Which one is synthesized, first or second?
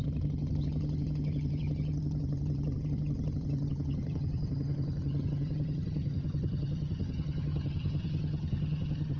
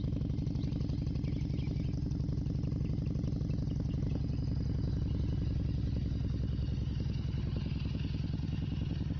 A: first